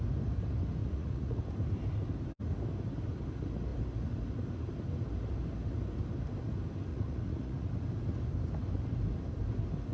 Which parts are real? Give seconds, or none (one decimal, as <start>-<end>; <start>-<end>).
0.0-0.8; 1.4-6.9; 7.7-9.9